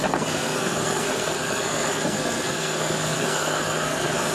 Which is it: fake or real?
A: fake